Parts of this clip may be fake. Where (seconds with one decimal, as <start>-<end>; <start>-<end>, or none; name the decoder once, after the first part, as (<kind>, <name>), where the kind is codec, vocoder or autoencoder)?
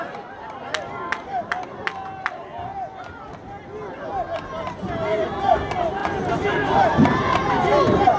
6.0-7.5 (vocoder, BigVGAN v2)